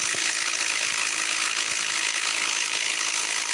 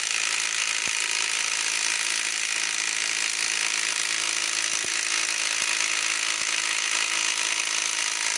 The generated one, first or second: first